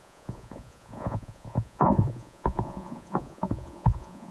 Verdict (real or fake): fake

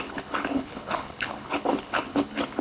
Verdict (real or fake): fake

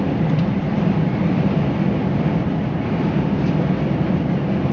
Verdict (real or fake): real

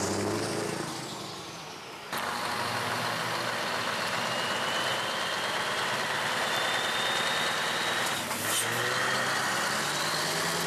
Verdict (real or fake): real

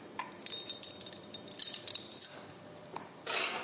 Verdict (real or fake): real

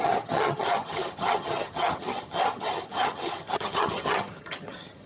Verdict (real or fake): fake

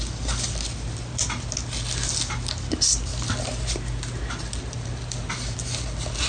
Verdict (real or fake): real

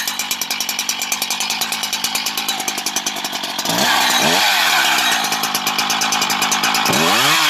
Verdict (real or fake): real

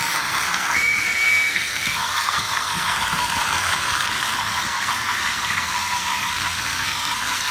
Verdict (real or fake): fake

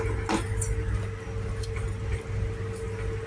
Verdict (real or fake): real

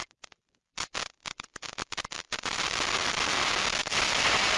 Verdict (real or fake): real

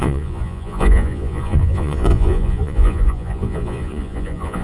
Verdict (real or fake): fake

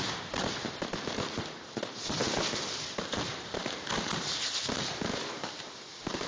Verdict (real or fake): real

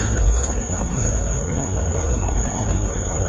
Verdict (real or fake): fake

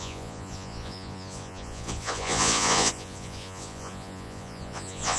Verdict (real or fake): fake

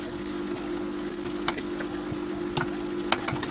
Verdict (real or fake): real